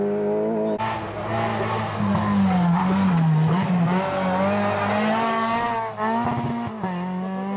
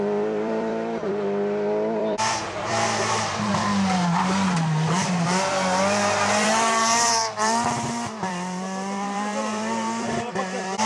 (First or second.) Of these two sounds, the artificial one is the second